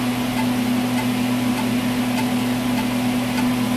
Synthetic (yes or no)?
no